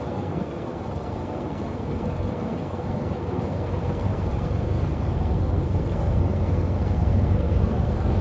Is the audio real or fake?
fake